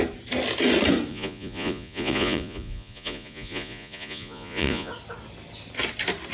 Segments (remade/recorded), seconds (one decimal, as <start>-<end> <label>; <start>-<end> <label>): 0.0-1.1 recorded; 1.1-4.9 remade; 4.9-6.3 recorded